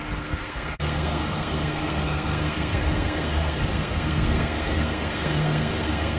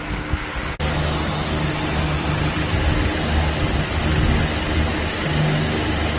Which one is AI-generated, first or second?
first